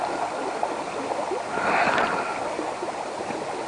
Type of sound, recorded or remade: recorded